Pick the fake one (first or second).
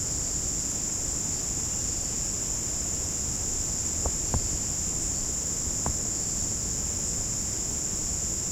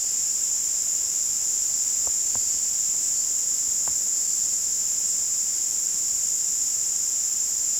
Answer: second